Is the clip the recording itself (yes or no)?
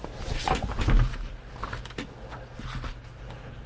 yes